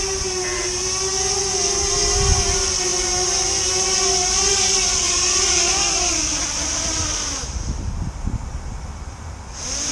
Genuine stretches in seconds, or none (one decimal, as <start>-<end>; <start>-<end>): 0.0-9.9